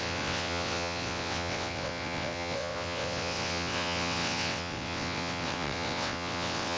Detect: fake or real fake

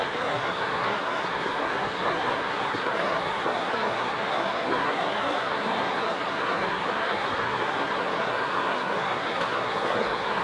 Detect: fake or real fake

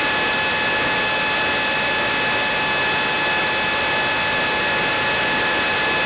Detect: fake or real real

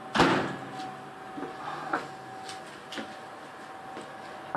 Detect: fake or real real